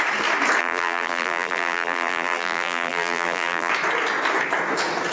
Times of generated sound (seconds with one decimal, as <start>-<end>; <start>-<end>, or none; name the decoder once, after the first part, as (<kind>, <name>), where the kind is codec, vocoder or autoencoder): 0.6-3.7 (vocoder, BigVGAN v2)

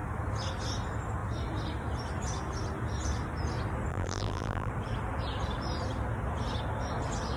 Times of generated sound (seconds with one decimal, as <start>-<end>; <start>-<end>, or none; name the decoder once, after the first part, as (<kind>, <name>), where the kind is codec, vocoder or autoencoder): 3.9-4.7 (vocoder, BigVGAN v2)

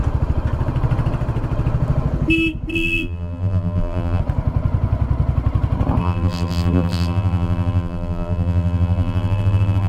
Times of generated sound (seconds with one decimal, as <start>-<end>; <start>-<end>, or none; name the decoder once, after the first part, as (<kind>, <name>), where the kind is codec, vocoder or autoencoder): 2.7-4.2 (vocoder, BigVGAN v2); 6.0-9.9

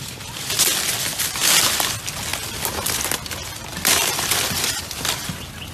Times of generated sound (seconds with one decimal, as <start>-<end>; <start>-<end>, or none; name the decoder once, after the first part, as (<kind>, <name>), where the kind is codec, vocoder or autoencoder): 3.7-4.8 (vocoder, BigVGAN v2)